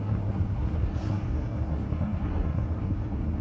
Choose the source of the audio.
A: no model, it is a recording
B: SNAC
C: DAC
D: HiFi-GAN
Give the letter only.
B